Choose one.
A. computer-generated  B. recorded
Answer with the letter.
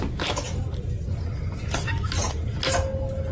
B